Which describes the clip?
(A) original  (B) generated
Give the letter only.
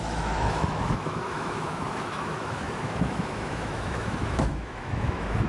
B